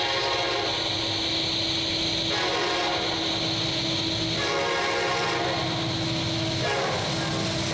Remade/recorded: recorded